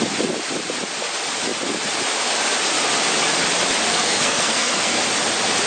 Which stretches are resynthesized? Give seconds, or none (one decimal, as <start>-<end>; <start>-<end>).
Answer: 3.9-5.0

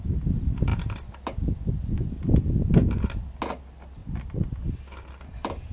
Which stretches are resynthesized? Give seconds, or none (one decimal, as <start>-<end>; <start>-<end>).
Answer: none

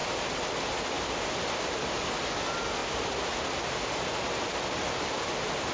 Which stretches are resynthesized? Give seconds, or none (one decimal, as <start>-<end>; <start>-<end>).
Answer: none

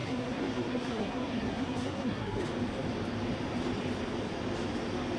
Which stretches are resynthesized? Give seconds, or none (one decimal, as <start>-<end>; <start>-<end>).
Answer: 0.0-2.4

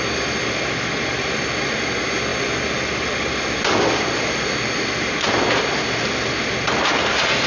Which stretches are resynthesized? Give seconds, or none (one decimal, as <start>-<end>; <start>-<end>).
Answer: none

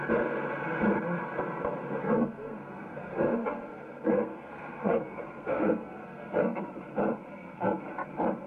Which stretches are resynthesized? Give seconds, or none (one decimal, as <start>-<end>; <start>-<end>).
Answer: 2.0-6.6; 7.3-7.8

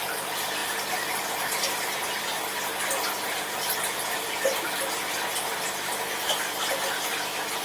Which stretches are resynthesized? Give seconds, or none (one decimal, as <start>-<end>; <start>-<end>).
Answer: none